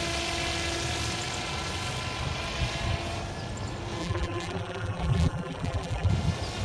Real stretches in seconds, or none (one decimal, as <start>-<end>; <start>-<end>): 0.0-4.0; 6.1-6.6